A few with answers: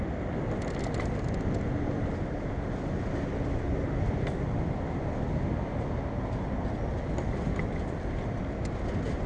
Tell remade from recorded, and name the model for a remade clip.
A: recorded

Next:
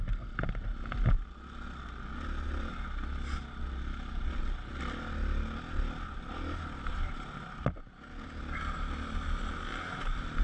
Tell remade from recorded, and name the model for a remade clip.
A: recorded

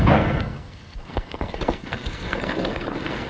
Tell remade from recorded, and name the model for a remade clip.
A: remade, codec, SNAC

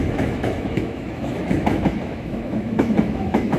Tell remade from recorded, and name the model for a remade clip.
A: remade, autoencoder, DAC-VAE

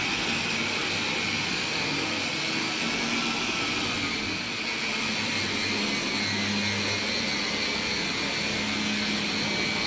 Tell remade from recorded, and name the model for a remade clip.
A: recorded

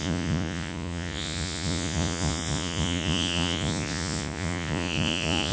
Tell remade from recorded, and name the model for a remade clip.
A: remade, vocoder, Vocos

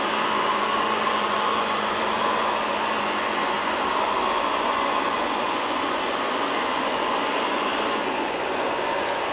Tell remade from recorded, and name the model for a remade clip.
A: remade, vocoder, Vocos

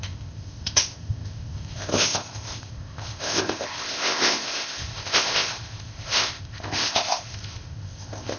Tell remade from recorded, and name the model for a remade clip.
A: remade, codec, ZipCodec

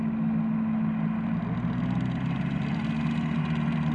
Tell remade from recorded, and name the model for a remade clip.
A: recorded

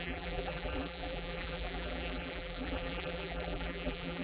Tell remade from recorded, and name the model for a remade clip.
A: remade, vocoder, BigVGAN v2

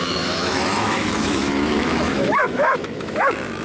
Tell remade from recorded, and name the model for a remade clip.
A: remade, autoencoder, DAC-VAE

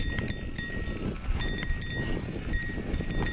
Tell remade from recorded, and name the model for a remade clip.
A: recorded